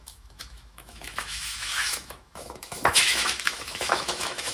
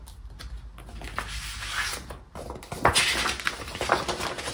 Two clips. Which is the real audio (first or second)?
second